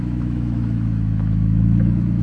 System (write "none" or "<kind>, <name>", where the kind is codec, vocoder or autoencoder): autoencoder, DAC-VAE